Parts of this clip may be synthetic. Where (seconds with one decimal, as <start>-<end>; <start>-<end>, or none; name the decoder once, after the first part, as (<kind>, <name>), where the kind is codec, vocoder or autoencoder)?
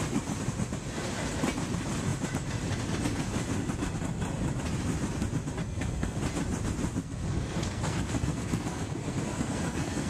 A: 5.6-6.2 (codec, SNAC); 7.0-10.1